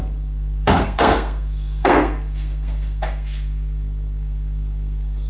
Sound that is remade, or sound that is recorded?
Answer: remade